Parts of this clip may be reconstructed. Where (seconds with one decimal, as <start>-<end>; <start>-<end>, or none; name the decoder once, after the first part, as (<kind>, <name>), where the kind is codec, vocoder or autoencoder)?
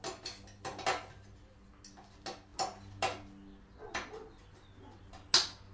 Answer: none